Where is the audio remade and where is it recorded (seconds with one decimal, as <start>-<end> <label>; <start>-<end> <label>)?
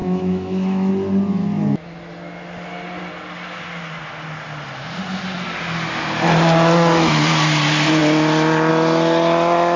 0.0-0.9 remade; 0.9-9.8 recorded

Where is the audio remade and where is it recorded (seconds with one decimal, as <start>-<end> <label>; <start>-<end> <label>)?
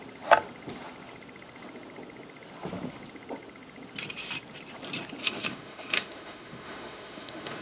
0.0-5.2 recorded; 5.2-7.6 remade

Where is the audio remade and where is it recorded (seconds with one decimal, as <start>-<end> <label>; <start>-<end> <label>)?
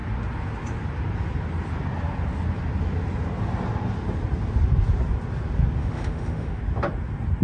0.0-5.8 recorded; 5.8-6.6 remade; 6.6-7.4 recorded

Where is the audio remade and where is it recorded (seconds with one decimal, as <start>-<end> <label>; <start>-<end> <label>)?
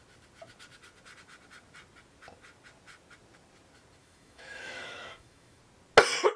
0.0-4.0 recorded; 4.0-5.6 remade; 5.6-6.4 recorded